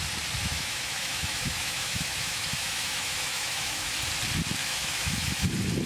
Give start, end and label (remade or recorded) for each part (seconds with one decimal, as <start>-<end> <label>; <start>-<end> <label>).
0.0-0.4 recorded; 0.4-3.9 remade; 3.9-4.6 recorded; 4.6-5.5 remade; 5.5-5.9 recorded